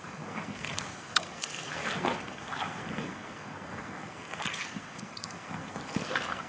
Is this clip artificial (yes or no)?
yes